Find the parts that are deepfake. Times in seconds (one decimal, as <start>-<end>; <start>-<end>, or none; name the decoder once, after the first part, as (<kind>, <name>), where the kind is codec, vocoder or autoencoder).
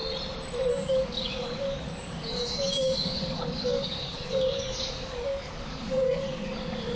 0.7-7.0 (codec, DAC)